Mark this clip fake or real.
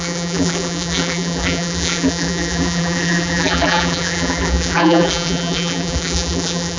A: fake